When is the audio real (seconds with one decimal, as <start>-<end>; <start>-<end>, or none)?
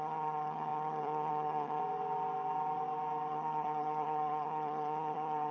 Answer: 1.8-3.3